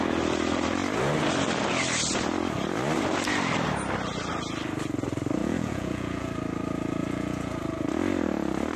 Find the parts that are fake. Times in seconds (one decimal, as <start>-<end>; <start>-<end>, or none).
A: 5.4-6.3; 7.0-7.6